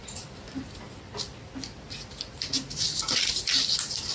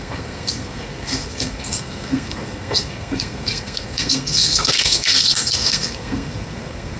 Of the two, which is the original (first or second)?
first